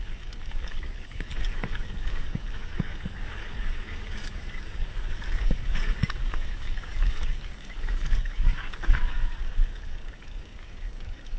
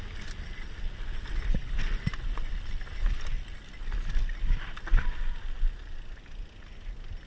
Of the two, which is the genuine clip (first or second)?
second